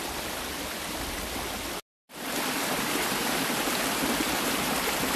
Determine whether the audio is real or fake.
real